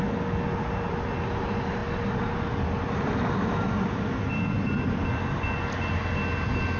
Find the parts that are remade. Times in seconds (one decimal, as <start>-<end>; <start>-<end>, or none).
none